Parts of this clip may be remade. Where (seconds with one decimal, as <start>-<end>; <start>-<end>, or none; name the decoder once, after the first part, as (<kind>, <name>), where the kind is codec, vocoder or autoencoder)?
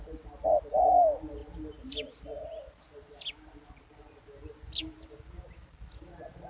none